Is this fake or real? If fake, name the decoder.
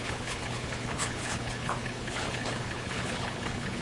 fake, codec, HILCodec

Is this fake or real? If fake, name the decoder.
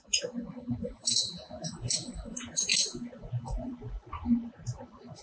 fake, vocoder, BigVGAN v2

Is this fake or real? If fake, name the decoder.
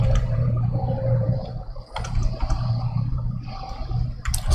fake, vocoder, BigVGAN v2